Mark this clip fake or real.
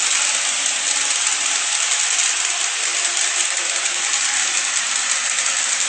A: real